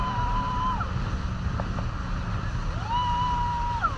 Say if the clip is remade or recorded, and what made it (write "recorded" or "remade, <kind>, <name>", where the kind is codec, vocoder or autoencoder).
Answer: recorded